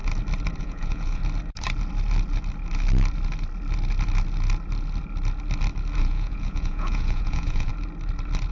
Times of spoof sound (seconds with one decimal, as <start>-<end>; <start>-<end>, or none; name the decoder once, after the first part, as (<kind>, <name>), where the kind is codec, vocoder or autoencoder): 0.6-1.2 (vocoder, Vocos); 6.0-7.7